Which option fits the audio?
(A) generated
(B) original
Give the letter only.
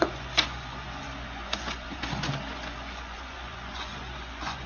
A